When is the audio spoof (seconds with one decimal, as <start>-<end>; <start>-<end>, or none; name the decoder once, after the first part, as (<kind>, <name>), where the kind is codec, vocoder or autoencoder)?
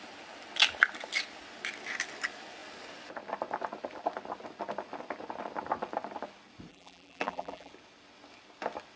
6.7-7.7 (vocoder, BigVGAN v2)